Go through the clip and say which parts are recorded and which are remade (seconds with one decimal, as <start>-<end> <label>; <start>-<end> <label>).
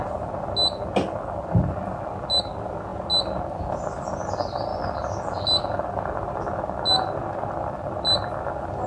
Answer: 0.0-8.9 recorded